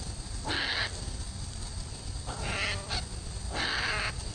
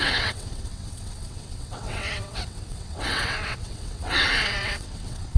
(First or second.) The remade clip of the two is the second